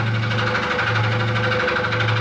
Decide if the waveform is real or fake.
real